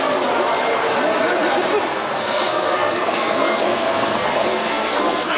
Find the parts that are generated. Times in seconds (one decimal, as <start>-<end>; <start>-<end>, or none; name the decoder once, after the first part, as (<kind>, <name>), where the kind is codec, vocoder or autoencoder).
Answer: 1.9-5.4 (codec, SNAC)